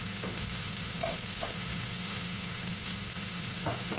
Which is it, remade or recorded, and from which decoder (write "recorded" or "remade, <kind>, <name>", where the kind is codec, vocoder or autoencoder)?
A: remade, autoencoder, DAC-VAE